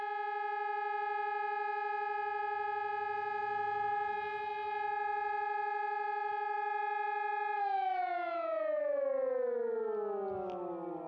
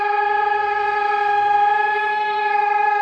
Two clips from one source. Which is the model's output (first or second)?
second